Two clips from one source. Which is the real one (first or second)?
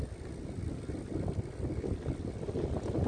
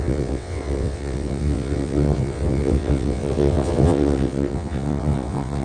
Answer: first